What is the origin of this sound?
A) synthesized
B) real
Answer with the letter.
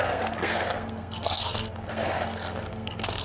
A